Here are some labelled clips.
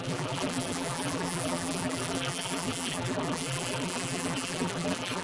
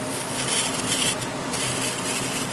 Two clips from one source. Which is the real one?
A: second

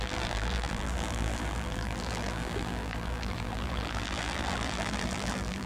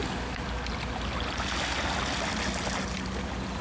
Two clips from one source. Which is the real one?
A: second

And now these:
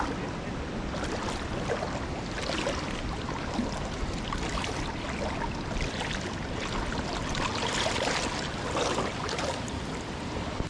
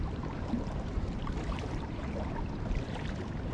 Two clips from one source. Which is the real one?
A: first